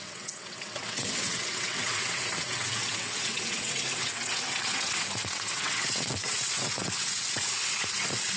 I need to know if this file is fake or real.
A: fake